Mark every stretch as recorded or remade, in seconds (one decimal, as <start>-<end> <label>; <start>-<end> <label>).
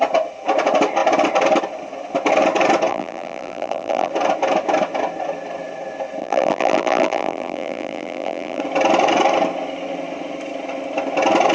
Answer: 0.0-2.9 recorded; 2.9-4.1 remade; 4.1-6.2 recorded; 6.2-8.6 remade; 8.6-11.5 recorded